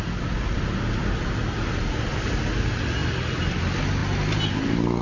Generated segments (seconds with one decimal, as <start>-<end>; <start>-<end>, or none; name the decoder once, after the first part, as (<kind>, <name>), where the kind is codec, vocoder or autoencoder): none